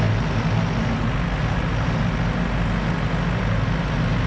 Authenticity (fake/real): real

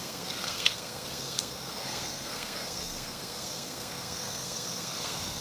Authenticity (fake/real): fake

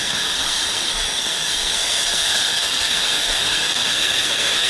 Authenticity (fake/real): fake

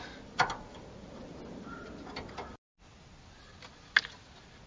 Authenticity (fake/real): real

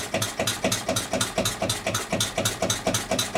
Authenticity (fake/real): real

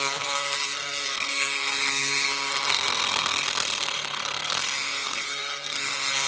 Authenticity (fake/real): fake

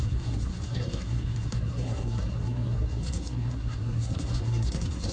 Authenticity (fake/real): fake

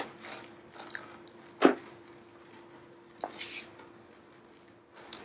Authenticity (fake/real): real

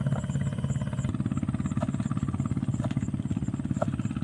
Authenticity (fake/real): real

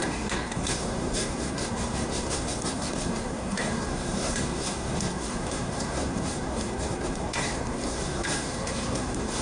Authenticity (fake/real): fake